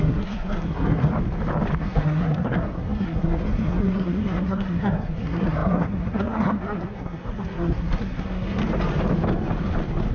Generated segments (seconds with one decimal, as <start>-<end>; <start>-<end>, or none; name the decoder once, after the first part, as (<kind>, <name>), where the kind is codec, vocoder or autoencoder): 0.0-1.1 (codec, SNAC); 1.8-8.6